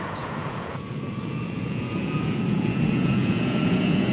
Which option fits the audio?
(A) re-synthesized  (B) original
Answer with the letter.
A